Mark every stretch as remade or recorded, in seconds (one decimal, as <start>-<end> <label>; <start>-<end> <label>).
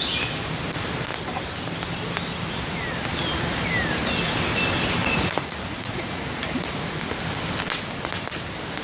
0.0-5.0 recorded; 5.0-7.0 remade; 7.0-8.8 recorded